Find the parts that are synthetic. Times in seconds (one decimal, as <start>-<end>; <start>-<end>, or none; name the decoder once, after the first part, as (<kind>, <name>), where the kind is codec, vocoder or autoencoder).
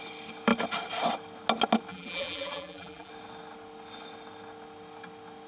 1.9-3.1 (vocoder, BigVGAN v2)